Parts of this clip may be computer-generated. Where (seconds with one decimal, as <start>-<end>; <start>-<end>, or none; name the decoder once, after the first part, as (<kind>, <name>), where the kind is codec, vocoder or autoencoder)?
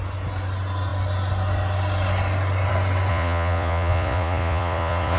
3.1-5.2 (vocoder, Vocos)